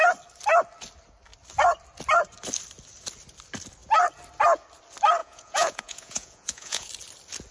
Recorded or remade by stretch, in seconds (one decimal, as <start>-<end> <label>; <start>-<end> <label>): 0.0-5.2 recorded; 5.2-6.9 remade; 6.9-7.5 recorded